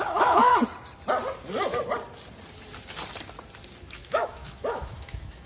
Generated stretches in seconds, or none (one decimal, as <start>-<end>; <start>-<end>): 0.0-0.5; 3.8-5.5